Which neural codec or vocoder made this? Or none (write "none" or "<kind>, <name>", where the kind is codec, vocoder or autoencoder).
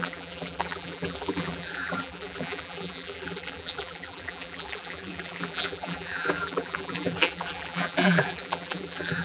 vocoder, BigVGAN v2